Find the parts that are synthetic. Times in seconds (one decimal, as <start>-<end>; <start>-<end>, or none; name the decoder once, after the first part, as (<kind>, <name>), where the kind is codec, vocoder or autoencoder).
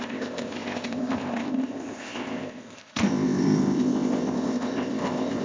0.0-5.4 (codec, ZipCodec)